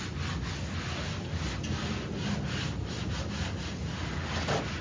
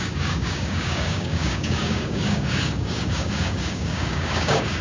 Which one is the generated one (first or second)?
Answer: second